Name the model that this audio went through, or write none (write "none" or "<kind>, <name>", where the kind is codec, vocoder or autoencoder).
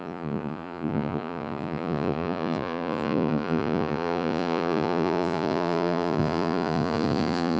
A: vocoder, Vocos